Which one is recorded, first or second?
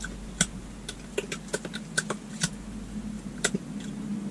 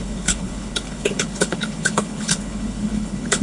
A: first